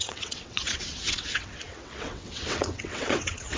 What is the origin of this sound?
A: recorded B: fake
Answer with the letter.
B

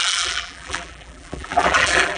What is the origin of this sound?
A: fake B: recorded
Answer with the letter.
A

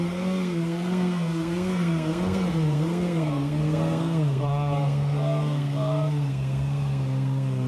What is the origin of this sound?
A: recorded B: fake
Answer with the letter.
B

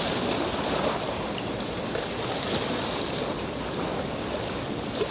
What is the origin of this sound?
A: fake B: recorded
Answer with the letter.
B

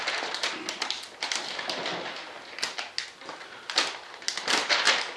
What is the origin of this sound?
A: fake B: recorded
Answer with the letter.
B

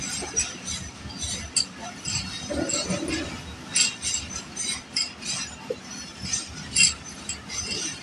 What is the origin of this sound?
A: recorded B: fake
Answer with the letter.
A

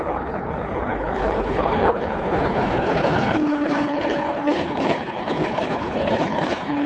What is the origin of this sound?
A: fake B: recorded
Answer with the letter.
A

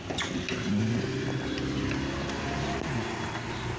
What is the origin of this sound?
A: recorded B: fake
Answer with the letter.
A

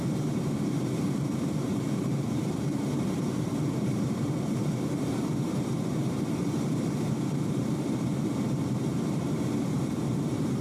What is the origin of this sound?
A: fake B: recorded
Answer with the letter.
A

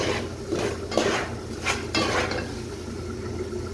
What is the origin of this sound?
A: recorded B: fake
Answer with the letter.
A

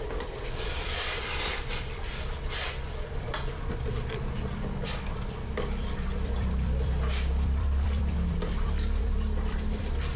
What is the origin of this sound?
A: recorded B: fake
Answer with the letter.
B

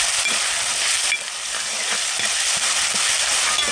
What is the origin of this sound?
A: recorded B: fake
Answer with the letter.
A